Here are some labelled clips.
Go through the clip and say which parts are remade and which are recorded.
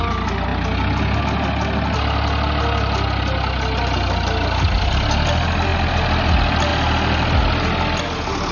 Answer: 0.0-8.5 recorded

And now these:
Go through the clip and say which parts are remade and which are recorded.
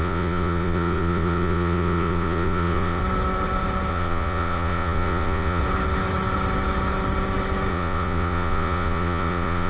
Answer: 0.0-3.0 remade; 3.0-3.9 recorded; 3.9-5.6 remade; 5.6-7.7 recorded; 7.7-9.7 remade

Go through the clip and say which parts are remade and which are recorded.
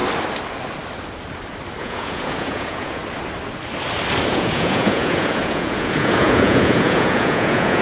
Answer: 0.0-1.8 recorded; 1.8-3.0 remade; 3.0-4.3 recorded; 4.3-7.8 remade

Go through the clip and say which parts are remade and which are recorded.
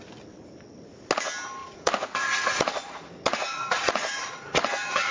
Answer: 0.0-1.6 recorded; 1.6-5.1 remade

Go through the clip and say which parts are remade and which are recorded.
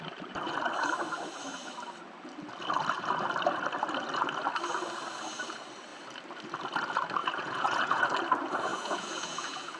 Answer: 0.0-7.2 recorded; 7.2-8.0 remade; 8.0-8.7 recorded; 8.7-9.8 remade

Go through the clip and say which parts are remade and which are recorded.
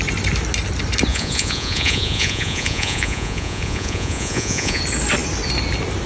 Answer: 0.0-1.1 recorded; 1.1-4.8 remade; 4.8-6.1 recorded